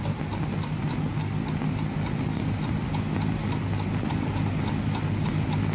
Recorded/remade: recorded